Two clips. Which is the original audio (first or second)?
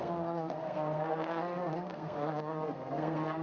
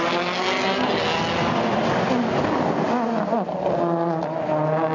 second